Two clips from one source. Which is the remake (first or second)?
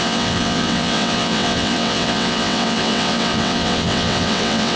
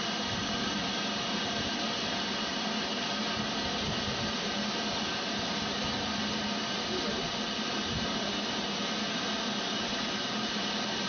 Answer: first